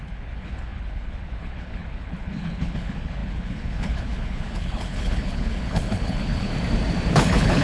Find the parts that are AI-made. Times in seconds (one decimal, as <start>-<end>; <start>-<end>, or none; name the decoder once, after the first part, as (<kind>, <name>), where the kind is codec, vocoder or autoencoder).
0.0-6.5 (codec, HILCodec); 7.1-7.6